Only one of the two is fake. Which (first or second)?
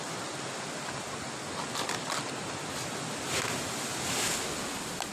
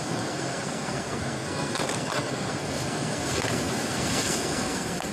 second